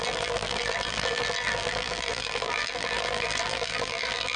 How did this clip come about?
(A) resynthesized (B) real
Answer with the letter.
A